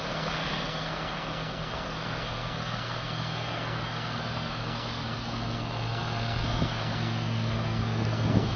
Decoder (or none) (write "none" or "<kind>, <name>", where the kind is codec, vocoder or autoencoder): codec, SNAC